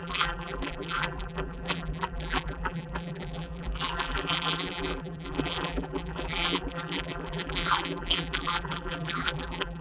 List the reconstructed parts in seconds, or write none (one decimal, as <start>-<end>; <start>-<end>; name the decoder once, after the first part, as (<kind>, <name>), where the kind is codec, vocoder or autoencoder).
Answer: 0.0-9.8 (vocoder, BigVGAN v2)